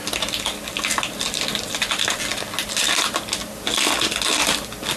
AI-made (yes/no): no